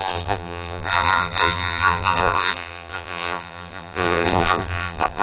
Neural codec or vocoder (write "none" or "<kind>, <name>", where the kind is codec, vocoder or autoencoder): vocoder, BigVGAN v2